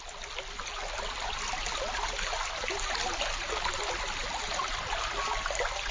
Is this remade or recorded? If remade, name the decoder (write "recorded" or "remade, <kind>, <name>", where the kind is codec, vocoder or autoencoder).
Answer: recorded